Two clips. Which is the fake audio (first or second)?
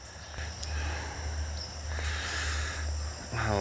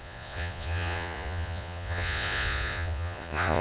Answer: second